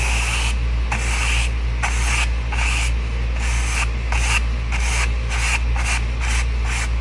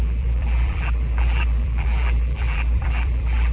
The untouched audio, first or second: first